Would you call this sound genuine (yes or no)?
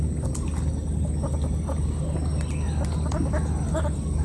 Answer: yes